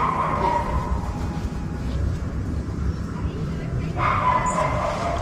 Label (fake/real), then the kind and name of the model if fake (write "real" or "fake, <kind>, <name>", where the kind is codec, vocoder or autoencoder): real